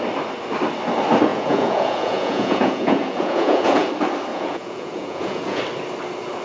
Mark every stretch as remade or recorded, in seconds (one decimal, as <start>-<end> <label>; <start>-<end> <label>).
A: 0.0-1.3 recorded; 1.3-3.9 remade; 3.9-4.3 recorded; 4.3-5.6 remade; 5.6-6.4 recorded